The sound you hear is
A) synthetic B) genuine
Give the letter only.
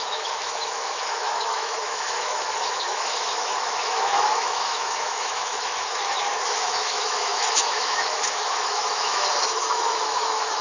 A